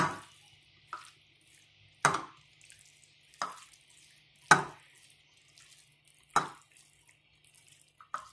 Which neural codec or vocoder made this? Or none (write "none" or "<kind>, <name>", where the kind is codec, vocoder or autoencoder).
none